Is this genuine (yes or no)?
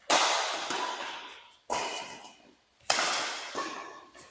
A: yes